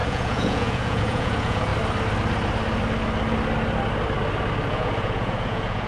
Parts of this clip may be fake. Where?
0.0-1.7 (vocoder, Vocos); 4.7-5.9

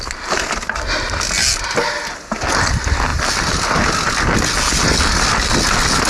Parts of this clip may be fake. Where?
none

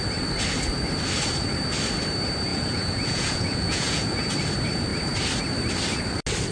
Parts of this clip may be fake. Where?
2.5-4.3 (vocoder, Vocos)